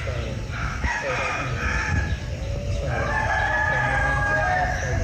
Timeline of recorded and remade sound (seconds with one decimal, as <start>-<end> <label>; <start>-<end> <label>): 0.0-0.6 recorded; 0.6-1.1 remade; 1.1-4.0 recorded; 4.0-5.0 remade